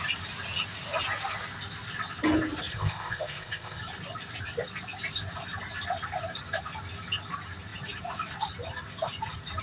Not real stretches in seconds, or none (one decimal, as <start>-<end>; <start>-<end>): 2.7-3.8